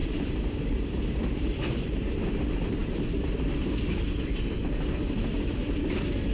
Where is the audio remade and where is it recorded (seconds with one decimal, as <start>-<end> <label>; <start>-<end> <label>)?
0.0-6.3 remade